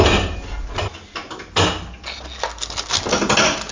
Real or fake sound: real